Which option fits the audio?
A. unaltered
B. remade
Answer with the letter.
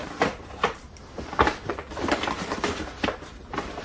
B